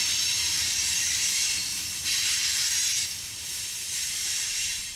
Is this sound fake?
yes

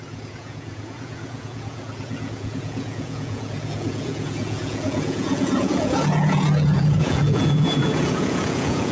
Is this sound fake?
yes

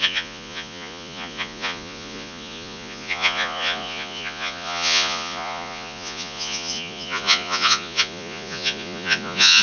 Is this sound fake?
yes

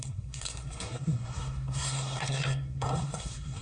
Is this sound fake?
yes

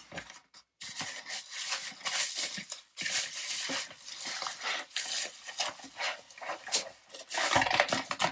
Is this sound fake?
no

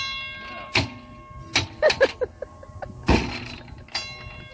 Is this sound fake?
no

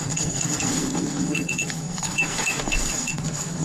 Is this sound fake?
yes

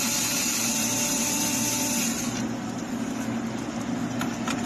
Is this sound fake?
no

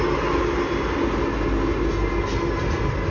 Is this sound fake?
no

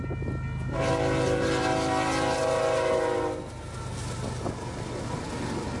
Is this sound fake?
no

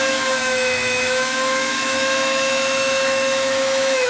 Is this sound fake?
yes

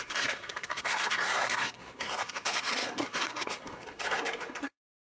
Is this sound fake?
yes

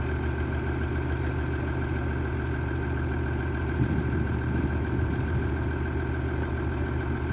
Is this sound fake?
no